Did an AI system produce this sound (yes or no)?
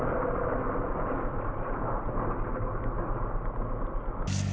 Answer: no